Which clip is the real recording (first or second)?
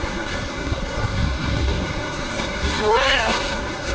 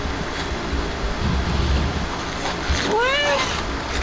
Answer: second